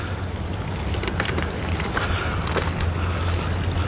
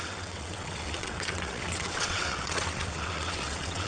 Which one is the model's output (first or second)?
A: second